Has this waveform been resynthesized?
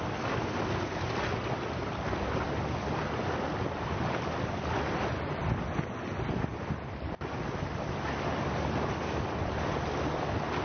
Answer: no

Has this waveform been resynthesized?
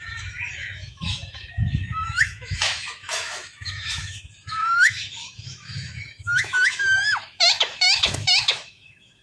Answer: yes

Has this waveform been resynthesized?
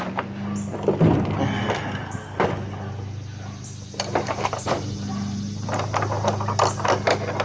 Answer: no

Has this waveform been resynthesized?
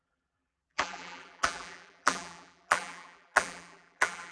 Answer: yes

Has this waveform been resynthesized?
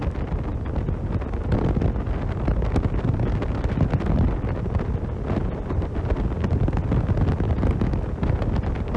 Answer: no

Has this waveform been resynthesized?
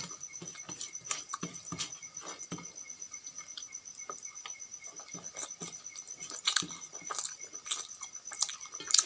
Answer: no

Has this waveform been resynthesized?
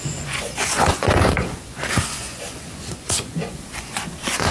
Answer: yes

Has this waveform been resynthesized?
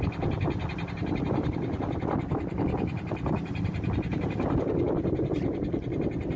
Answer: no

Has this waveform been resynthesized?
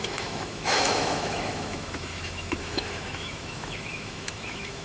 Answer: yes